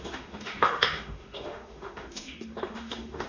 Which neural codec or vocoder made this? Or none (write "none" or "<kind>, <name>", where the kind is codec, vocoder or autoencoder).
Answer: autoencoder, DAC-VAE